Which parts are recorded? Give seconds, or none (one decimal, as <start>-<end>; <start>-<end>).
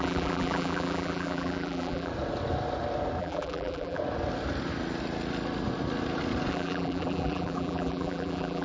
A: 2.1-3.2; 4.0-6.5